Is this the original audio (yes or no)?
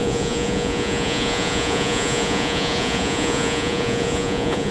no